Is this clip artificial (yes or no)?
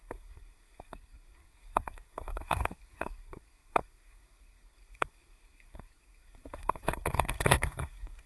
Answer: yes